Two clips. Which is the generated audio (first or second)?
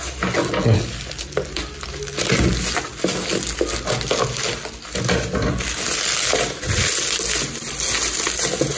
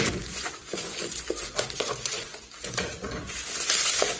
second